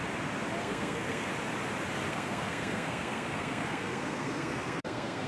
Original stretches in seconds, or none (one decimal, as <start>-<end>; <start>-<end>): 0.0-0.6; 1.3-2.1